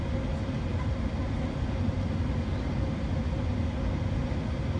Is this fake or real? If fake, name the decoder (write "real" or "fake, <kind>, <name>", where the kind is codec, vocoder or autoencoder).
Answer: real